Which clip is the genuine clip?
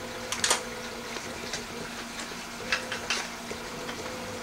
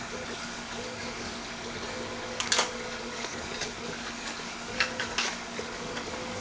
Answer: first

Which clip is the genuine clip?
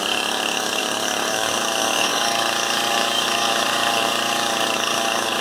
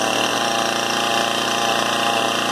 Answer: second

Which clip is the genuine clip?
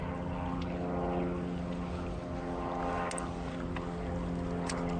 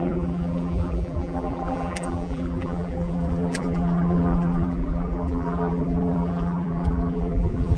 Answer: first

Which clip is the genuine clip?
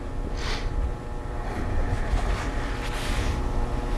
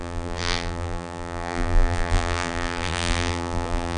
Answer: first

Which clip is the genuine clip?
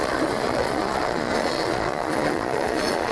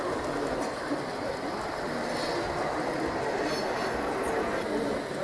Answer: second